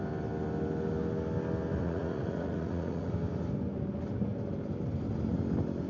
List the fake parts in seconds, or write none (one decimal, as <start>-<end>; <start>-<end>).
1.8-3.1